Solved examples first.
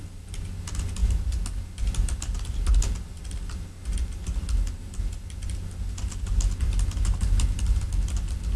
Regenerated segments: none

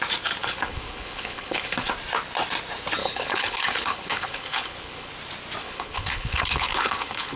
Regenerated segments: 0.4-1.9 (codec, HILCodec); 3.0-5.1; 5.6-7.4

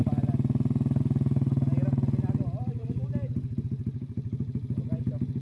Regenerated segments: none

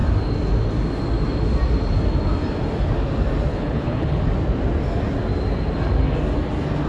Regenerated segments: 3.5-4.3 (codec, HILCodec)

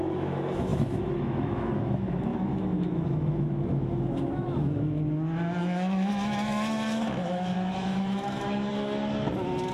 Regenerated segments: 0.0-8.7 (autoencoder, DAC-VAE)

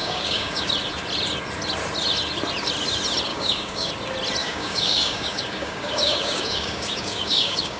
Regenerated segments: 0.0-0.7 (codec, DAC); 3.3-3.9; 4.4-7.8

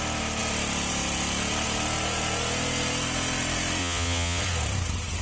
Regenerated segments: 3.8-4.4 (vocoder, Vocos)